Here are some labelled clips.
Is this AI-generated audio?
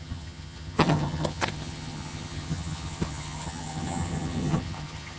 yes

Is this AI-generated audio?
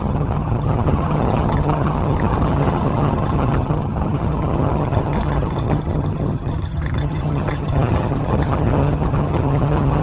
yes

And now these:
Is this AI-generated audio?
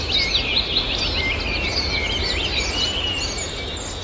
no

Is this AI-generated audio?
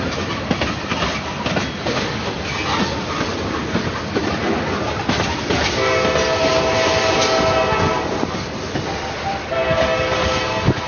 no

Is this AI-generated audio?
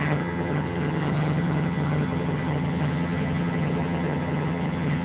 yes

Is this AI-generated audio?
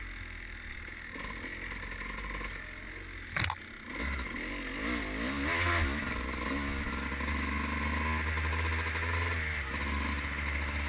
no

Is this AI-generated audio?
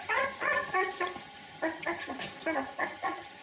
yes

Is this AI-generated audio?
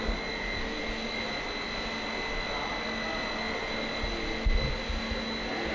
no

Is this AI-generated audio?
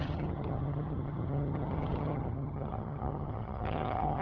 yes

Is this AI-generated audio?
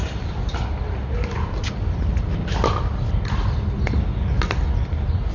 no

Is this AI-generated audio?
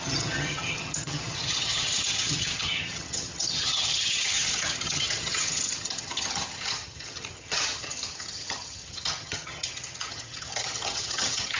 yes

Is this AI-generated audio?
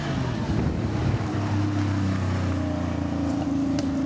no